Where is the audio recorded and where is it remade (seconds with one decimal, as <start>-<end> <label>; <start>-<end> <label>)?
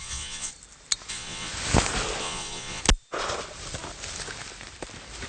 0.0-0.5 remade; 0.5-1.1 recorded; 1.1-1.5 remade; 1.5-2.2 recorded; 2.2-2.8 remade; 2.8-5.3 recorded